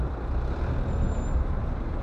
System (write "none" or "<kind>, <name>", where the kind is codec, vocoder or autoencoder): none